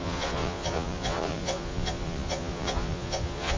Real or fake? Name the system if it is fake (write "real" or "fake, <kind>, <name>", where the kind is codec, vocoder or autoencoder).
fake, vocoder, Vocos